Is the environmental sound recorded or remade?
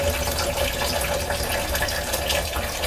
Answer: recorded